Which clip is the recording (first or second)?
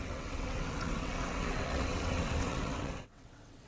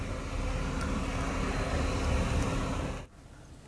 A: second